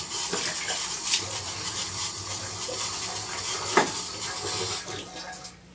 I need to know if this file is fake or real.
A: real